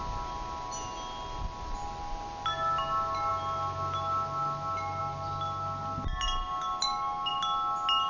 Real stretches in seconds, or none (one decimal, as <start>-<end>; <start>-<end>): 0.0-8.1